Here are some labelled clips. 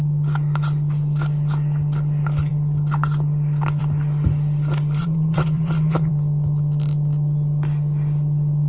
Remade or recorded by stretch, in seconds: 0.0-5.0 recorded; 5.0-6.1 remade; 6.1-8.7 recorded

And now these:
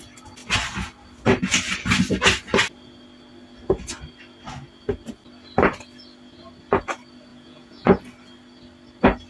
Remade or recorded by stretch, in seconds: 0.0-7.3 recorded; 7.3-8.0 remade; 8.0-9.3 recorded